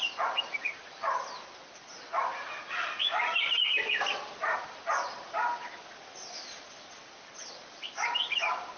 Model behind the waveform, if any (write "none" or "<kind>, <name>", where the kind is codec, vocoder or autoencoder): none